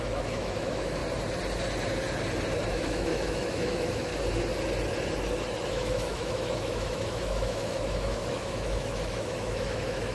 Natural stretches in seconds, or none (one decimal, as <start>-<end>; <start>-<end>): 1.0-2.7; 4.1-5.7